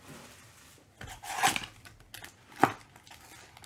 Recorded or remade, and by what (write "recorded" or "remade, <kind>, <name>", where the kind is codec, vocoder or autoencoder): recorded